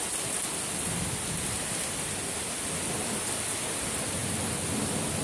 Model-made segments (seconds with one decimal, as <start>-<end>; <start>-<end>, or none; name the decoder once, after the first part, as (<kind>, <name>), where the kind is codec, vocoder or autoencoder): none